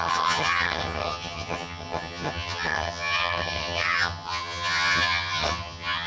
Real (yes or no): no